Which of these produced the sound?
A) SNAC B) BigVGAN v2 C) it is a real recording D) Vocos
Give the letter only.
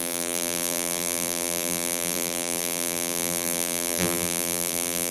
B